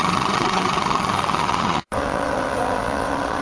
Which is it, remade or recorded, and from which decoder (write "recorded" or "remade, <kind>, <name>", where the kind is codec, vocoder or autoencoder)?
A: remade, vocoder, WaveNeXt